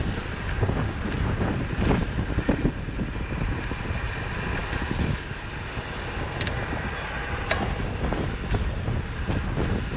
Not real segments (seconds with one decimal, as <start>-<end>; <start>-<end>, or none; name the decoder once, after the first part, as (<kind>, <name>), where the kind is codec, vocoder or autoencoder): none